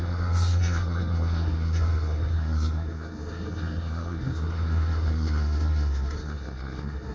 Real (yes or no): no